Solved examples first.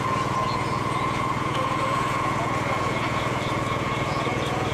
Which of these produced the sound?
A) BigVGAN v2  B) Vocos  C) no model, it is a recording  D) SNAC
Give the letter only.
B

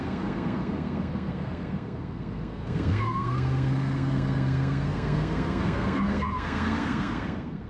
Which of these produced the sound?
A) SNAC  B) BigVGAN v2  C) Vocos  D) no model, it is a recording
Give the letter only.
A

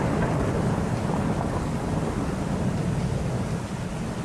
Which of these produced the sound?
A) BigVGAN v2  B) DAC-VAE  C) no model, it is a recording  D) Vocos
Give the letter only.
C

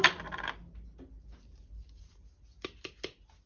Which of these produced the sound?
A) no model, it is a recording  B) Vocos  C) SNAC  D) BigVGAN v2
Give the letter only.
A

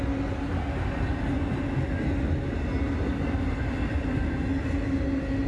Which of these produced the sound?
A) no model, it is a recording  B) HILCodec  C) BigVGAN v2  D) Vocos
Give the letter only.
A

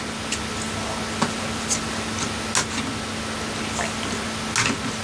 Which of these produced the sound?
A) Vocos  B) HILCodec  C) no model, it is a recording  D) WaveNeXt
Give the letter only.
C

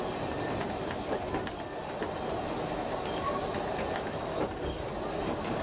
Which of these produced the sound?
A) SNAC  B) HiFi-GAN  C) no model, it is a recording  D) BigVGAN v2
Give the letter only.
C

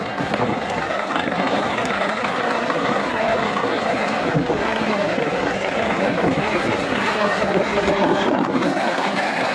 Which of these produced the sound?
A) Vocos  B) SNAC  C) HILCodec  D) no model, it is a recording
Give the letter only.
B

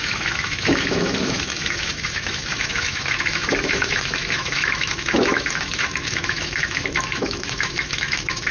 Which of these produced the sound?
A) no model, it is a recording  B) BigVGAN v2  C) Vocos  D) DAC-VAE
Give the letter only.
D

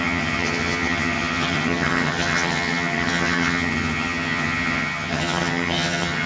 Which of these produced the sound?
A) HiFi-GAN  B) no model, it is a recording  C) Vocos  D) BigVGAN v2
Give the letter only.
A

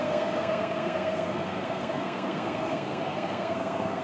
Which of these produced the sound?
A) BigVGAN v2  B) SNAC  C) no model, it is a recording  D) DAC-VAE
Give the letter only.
B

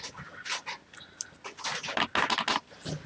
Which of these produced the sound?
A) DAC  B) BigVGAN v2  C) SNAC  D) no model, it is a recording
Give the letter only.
D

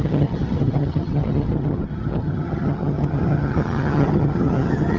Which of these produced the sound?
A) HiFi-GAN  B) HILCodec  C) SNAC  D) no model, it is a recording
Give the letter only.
A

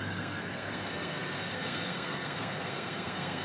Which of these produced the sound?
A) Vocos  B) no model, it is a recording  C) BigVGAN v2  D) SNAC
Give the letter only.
D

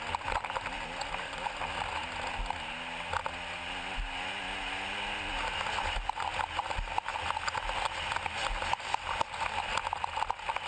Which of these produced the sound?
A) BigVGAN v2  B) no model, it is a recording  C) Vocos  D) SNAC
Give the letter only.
B